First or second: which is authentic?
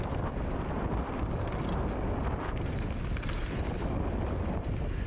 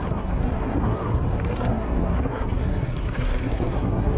first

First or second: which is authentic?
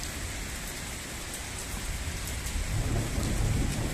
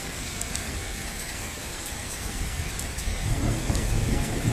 first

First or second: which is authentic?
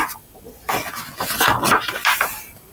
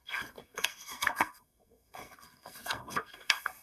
first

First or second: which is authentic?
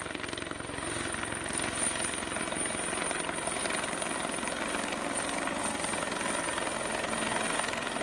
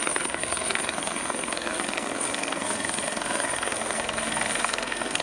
first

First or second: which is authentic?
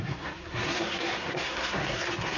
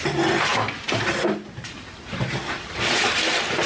second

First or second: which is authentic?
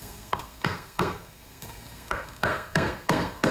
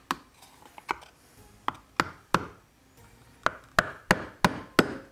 second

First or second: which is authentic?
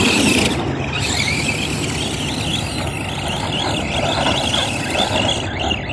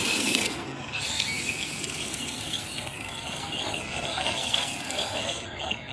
first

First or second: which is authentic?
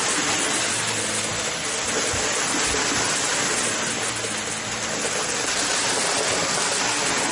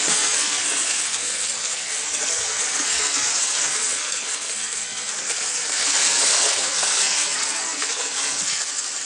first